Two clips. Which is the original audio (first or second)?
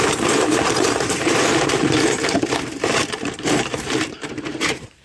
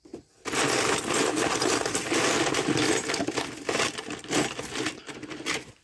second